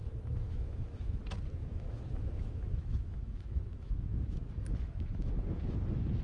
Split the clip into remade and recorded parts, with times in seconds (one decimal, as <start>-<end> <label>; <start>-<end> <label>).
0.0-1.2 remade; 1.2-1.6 recorded; 1.6-5.3 remade; 5.3-6.2 recorded